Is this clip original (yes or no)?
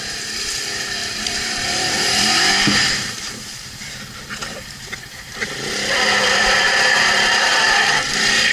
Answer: no